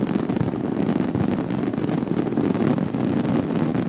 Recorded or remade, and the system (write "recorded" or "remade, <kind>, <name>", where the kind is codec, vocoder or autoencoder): recorded